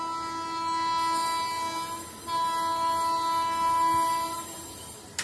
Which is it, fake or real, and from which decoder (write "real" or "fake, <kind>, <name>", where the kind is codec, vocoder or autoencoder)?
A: real